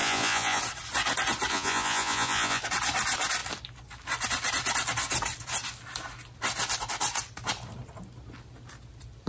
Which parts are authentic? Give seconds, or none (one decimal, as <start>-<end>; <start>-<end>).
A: 0.6-1.5; 2.6-9.3